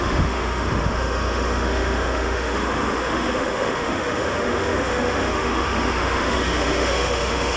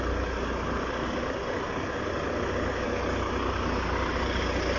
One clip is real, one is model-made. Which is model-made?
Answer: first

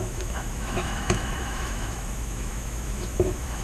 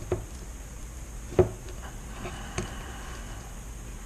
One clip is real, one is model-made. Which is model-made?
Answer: first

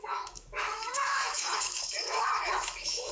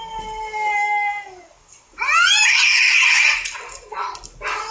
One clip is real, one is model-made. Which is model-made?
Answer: first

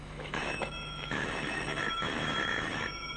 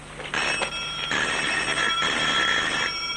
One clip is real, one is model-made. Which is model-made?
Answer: first